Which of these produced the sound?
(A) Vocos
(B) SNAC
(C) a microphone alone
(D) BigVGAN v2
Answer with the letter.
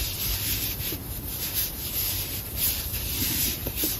D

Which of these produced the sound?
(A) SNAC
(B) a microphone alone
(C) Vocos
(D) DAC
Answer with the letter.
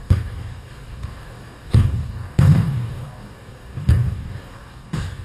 D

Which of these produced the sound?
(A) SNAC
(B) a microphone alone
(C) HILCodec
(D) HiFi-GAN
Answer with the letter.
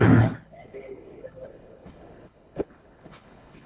C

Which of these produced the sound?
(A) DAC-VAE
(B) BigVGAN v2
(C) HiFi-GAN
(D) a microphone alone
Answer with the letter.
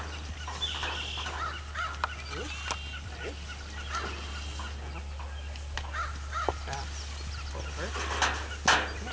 D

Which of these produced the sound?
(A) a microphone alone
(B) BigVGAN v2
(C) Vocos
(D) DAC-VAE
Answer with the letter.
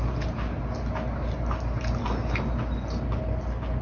A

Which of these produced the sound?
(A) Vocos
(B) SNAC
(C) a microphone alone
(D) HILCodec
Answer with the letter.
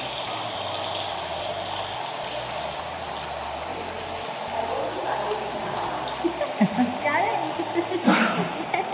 C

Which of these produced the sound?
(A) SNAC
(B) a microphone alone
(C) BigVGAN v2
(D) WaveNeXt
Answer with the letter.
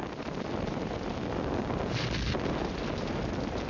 B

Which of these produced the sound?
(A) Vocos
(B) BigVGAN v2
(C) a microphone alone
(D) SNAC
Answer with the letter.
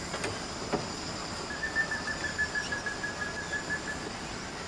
C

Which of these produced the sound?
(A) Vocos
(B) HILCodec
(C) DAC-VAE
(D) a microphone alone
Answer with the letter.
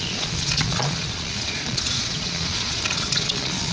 A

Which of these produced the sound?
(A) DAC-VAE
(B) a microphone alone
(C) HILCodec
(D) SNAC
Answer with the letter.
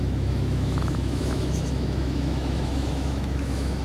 A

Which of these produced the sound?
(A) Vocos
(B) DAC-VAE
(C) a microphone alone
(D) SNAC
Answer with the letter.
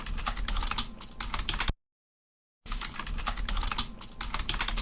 C